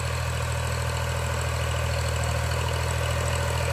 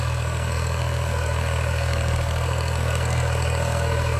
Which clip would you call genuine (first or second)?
first